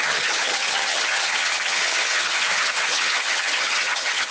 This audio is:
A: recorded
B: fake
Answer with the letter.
B